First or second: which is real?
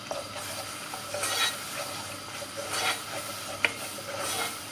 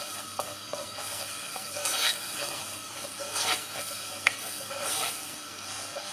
first